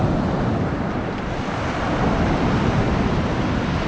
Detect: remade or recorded recorded